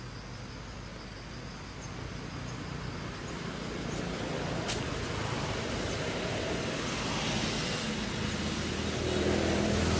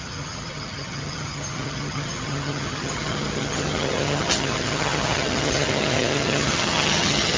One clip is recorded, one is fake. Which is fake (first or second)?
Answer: second